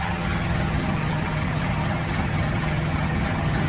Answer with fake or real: fake